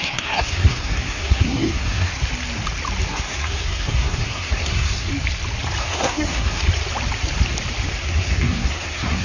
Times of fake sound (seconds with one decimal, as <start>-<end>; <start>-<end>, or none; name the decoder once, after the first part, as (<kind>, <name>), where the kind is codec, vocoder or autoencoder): 0.0-2.1 (codec, SNAC); 3.1-5.1; 5.8-6.7; 8.0-9.2